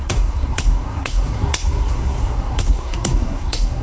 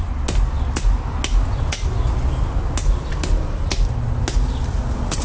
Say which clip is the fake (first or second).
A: first